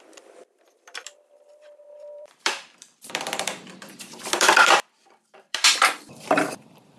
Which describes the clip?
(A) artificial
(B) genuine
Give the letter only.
A